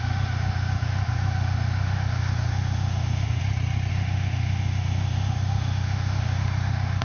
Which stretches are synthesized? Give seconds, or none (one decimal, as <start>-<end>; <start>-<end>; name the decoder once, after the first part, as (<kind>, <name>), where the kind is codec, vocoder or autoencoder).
0.0-3.4 (autoencoder, DAC-VAE); 3.9-7.0